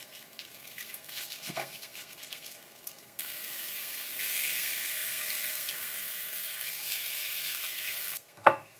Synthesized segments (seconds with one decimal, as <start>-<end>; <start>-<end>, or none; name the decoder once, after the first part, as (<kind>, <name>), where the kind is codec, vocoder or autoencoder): 0.0-8.8 (codec, SNAC)